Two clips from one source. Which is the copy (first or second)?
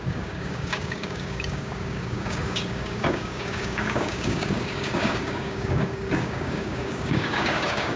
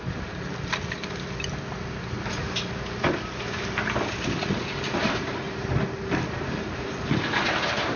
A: first